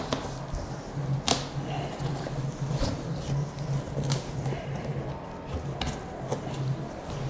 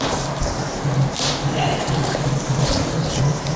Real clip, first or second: first